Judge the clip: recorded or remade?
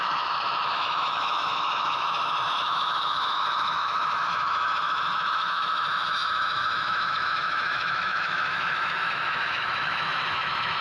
remade